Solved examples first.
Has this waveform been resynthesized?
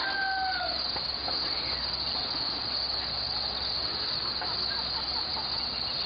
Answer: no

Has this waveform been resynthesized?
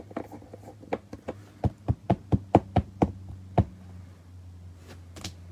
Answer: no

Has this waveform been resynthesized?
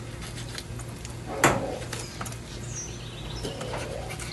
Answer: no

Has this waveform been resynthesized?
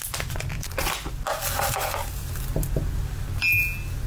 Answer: no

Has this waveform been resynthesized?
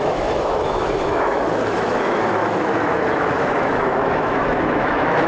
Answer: yes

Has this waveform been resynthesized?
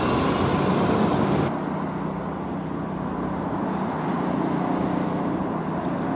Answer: no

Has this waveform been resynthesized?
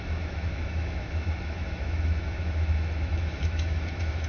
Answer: yes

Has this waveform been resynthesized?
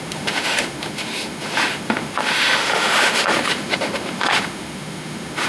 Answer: yes